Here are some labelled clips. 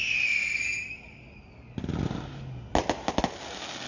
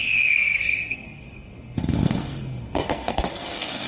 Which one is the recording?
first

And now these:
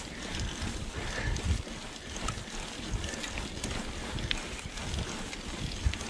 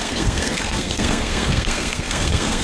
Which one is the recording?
first